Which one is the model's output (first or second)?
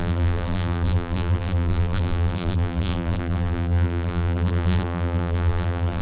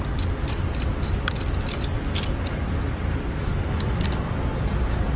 first